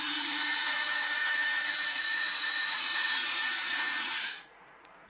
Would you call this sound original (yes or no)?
no